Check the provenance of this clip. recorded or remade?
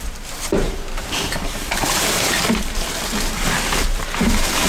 remade